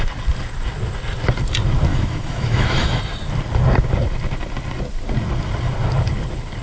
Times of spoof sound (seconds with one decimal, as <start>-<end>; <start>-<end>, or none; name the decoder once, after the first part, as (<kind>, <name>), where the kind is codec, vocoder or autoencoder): 1.9-3.0 (autoencoder, DAC-VAE)